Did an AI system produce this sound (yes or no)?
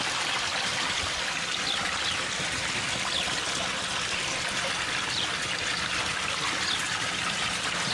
no